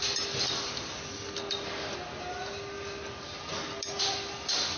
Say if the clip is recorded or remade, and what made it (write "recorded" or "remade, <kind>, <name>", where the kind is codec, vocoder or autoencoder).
recorded